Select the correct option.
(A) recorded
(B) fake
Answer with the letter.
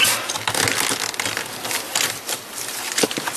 A